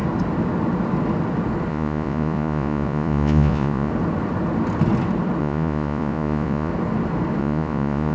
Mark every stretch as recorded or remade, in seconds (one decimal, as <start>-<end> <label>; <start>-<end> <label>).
0.0-1.7 recorded; 1.7-3.9 remade; 3.9-5.4 recorded; 5.4-6.7 remade; 6.7-7.4 recorded; 7.4-8.1 remade